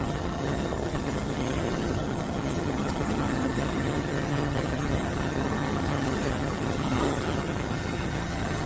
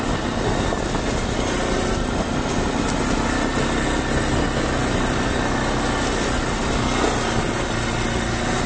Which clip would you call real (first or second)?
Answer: second